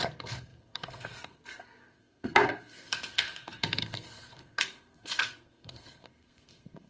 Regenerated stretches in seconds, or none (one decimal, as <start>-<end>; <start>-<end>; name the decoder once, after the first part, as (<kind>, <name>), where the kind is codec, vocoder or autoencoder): 0.0-6.9 (codec, SNAC)